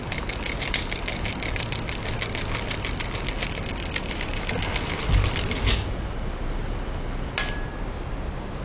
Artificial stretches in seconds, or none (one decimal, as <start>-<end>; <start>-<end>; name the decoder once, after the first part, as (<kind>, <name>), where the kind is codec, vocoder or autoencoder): none